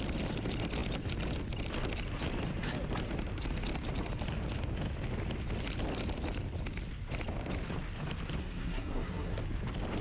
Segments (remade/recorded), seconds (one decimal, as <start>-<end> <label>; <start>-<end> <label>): 0.0-8.4 recorded; 8.4-9.4 remade; 9.4-10.0 recorded